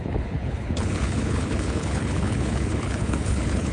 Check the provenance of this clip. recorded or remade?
remade